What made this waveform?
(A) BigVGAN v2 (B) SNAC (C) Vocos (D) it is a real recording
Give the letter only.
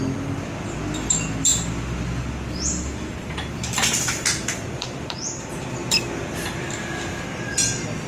A